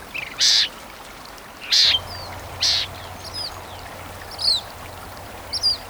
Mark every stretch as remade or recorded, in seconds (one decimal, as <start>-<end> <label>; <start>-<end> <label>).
0.0-3.5 remade; 3.5-5.9 recorded